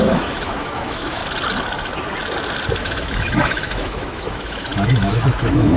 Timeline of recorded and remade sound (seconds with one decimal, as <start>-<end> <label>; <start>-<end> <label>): 0.0-1.2 remade; 1.2-2.8 recorded; 2.8-5.8 remade